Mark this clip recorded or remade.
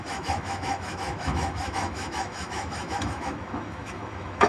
remade